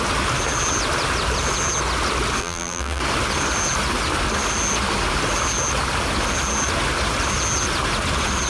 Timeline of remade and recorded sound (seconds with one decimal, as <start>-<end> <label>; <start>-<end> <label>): 0.0-2.4 recorded; 2.4-3.0 remade; 3.0-8.5 recorded